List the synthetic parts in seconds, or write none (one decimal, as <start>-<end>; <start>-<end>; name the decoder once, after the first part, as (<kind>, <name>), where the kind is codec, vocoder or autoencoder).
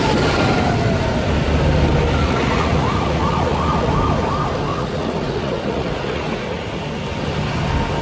2.2-3.9 (vocoder, Vocos); 4.7-6.8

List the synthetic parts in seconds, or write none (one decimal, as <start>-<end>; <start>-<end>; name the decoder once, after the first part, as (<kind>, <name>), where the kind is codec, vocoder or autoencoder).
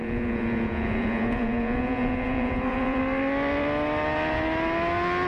0.0-3.0 (vocoder, Vocos)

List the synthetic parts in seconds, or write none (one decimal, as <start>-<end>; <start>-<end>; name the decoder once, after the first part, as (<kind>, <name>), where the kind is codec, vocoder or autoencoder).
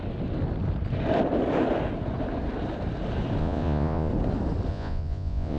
3.4-4.1 (vocoder, Vocos); 4.7-5.6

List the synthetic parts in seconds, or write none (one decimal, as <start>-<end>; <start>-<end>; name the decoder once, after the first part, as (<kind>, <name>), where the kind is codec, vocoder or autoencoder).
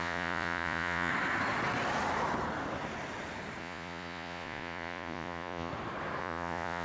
0.0-1.1 (vocoder, Vocos); 3.6-5.7; 6.2-6.8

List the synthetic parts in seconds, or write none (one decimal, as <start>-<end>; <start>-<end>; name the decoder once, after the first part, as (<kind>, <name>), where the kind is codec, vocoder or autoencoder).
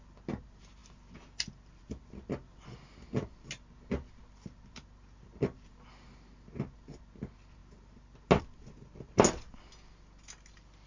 none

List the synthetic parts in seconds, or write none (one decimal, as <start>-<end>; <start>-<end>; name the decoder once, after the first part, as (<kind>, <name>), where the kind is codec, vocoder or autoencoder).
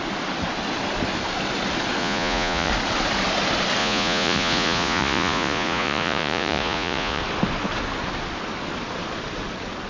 2.0-2.7 (vocoder, Vocos); 3.8-7.2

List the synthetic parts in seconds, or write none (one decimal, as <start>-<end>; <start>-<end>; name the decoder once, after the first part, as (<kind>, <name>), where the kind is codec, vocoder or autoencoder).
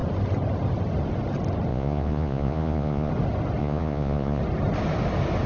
1.7-3.1 (vocoder, Vocos); 3.6-4.4